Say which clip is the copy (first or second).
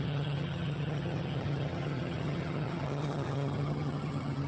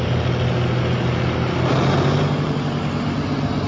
first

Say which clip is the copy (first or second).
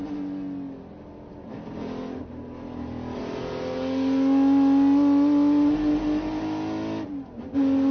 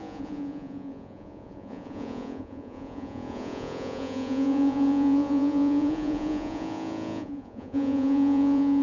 second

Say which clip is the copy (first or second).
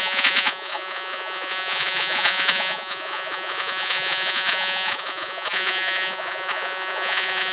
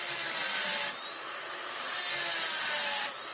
first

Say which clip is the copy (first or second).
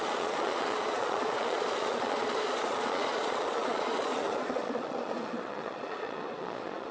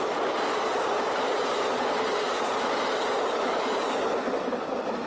first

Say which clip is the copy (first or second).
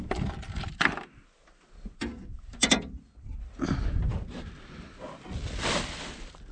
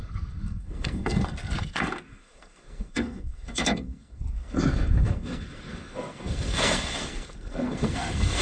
second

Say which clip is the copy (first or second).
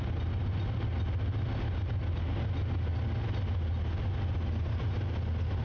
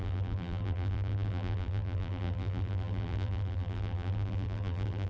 second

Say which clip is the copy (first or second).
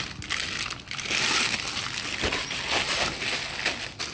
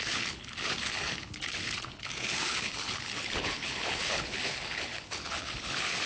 second